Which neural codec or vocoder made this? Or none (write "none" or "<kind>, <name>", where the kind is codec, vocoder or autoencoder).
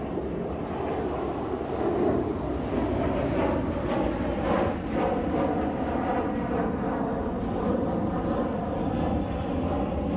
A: none